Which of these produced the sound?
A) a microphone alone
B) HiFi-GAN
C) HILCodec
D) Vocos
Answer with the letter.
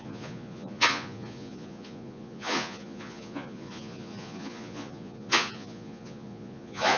D